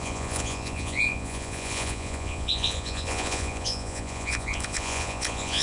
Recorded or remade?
remade